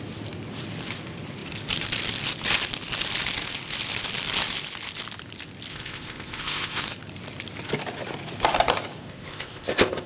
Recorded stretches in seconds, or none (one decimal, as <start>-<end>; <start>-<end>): 0.0-5.7; 6.8-9.0